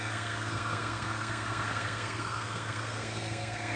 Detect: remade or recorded remade